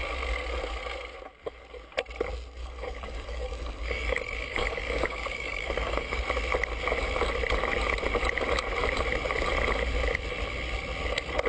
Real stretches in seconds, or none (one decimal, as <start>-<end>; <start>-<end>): 0.0-2.6; 6.2-11.5